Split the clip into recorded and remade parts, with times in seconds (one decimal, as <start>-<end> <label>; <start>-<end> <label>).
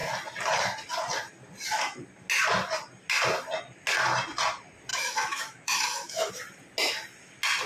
0.0-4.9 recorded; 4.9-6.3 remade; 6.3-7.7 recorded